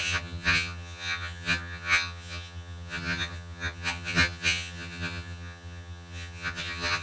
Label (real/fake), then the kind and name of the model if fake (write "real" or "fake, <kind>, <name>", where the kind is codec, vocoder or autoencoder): fake, vocoder, HiFi-GAN